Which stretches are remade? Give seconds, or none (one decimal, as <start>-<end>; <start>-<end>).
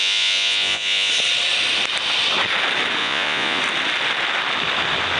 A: 0.0-1.1; 3.0-3.6